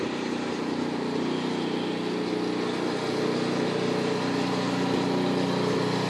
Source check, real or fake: real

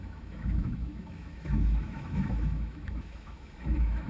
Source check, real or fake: fake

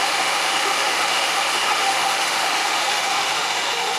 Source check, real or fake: fake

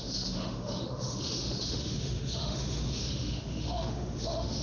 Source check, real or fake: fake